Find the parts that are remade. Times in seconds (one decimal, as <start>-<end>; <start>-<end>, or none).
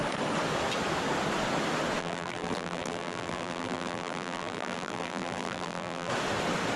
2.0-6.1